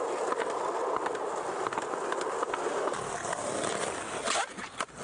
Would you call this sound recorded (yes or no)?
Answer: yes